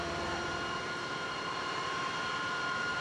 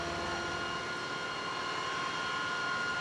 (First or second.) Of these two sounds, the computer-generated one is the first